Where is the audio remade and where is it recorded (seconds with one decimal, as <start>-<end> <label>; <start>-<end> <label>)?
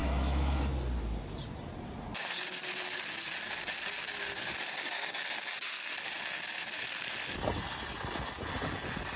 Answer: 0.0-0.6 remade; 0.6-9.2 recorded